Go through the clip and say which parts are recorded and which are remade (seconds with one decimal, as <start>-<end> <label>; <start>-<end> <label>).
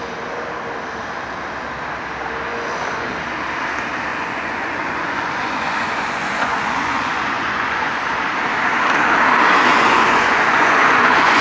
0.0-2.5 recorded; 2.5-3.1 remade; 3.1-4.1 recorded; 4.1-8.0 remade; 8.0-9.7 recorded; 9.7-11.4 remade